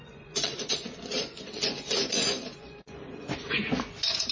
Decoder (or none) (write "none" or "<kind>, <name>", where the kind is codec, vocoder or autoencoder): vocoder, Vocos